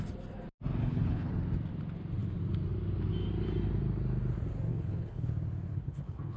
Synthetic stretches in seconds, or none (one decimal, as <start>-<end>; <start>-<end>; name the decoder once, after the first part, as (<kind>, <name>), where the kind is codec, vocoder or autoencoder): 0.8-1.3 (codec, HILCodec); 4.7-5.3; 5.7-6.4